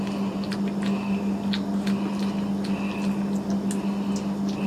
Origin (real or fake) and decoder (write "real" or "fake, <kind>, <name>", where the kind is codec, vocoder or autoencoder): real